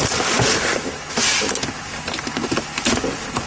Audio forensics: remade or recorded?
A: recorded